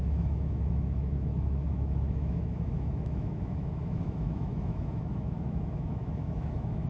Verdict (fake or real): fake